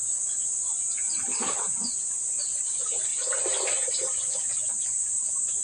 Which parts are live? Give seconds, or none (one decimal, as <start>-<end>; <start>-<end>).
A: 0.0-5.6